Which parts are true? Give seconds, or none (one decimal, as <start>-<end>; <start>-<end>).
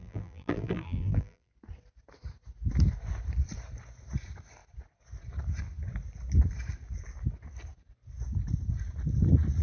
1.5-9.6